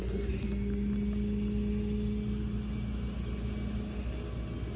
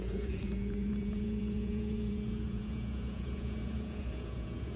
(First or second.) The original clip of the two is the first